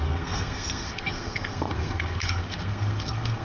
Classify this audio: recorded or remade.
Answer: remade